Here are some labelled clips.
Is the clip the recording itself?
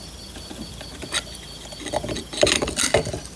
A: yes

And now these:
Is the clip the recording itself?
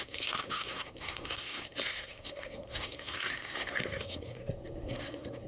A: no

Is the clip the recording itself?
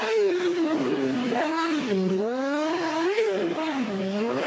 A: no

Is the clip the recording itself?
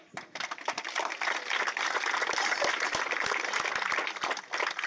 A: yes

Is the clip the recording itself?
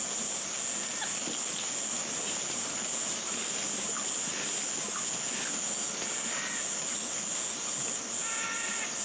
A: yes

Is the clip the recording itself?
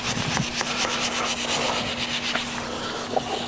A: yes